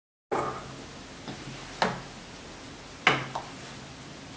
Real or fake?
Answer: real